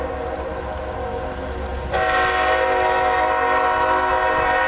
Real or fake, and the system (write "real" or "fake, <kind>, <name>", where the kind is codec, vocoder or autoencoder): real